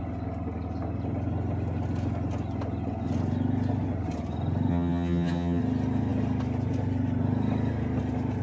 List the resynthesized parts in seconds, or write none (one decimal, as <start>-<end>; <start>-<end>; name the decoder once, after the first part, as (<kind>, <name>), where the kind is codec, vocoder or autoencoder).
4.7-5.6 (vocoder, HiFi-GAN)